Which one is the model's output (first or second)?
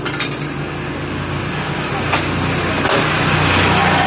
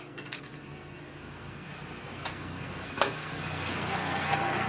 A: second